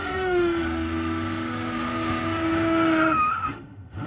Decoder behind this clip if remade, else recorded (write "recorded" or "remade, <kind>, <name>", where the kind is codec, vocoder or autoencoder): remade, autoencoder, DAC-VAE